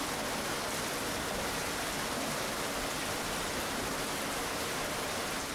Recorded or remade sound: recorded